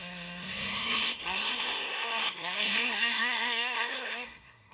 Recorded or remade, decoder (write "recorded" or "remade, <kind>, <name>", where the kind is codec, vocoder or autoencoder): remade, codec, SNAC